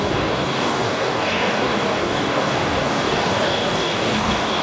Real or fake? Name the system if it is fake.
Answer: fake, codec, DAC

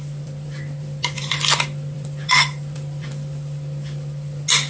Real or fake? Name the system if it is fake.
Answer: real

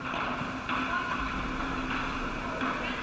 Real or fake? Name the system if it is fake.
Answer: real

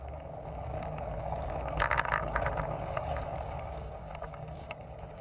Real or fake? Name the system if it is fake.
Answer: fake, codec, DAC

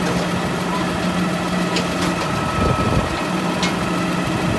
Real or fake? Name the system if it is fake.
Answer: real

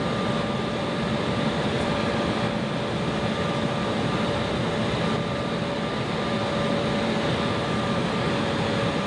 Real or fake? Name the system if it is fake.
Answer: real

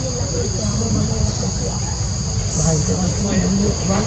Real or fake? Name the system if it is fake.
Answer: real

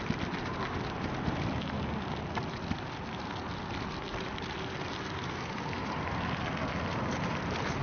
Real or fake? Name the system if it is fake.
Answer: real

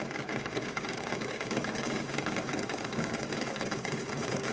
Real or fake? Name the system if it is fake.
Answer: fake, codec, DAC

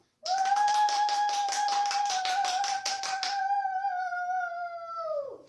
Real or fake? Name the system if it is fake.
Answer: real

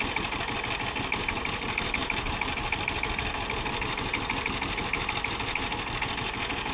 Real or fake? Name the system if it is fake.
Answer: real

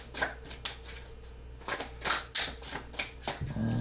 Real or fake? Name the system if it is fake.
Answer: real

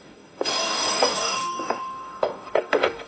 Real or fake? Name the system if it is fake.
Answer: fake, codec, DAC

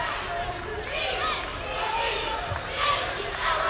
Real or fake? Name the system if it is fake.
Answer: real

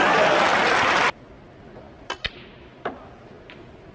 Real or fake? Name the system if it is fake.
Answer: real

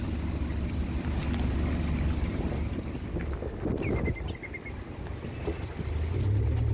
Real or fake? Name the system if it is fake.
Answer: real